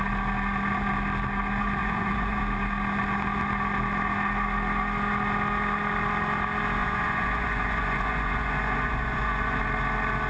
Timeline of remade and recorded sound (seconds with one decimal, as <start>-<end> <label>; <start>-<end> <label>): 0.0-1.8 recorded; 1.8-2.4 remade; 2.4-6.8 recorded; 6.8-9.6 remade; 9.6-10.3 recorded

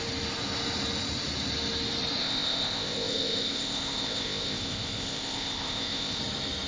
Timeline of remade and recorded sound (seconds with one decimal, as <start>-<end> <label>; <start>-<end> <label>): 0.0-2.2 recorded; 2.2-6.2 remade; 6.2-6.7 recorded

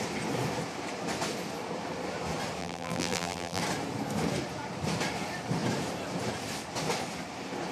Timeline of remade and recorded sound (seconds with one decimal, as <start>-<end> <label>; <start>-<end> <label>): 0.0-2.6 recorded; 2.6-3.6 remade; 3.6-7.7 recorded

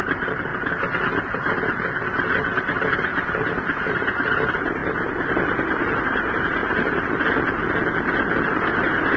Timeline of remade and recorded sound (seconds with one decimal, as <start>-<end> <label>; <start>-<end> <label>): 0.0-0.5 remade; 0.5-2.7 recorded; 2.7-3.1 remade; 3.1-3.9 recorded; 3.9-4.8 remade; 4.8-6.0 recorded; 6.0-6.6 remade; 6.6-8.4 recorded; 8.4-9.2 remade

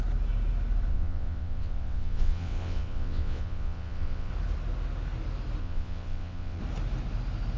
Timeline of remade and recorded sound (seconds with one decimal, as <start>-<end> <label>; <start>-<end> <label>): 0.0-0.9 recorded; 0.9-4.3 remade; 4.3-5.6 recorded; 5.6-6.6 remade; 6.6-7.6 recorded

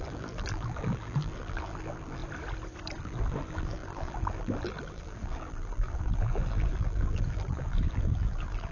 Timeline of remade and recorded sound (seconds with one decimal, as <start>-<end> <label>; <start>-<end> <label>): 0.0-2.2 remade; 2.2-3.0 recorded; 3.0-8.7 remade